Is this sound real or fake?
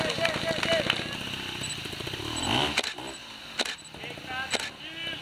real